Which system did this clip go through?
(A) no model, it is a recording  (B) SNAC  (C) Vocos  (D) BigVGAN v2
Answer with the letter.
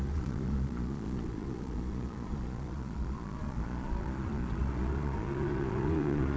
C